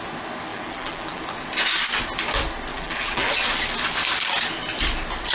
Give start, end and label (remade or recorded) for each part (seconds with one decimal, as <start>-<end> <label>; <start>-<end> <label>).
0.0-0.5 recorded; 0.5-1.2 remade; 1.2-2.7 recorded; 2.7-3.3 remade; 3.3-5.3 recorded